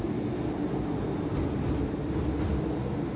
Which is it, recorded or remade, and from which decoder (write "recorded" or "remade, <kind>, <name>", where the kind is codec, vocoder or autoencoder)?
recorded